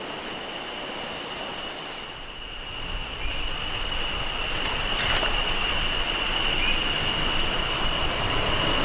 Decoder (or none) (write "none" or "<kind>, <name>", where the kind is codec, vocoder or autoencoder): none